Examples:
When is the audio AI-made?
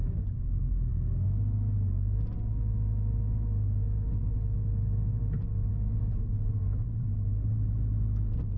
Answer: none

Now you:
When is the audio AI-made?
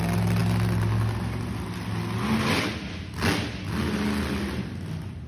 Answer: none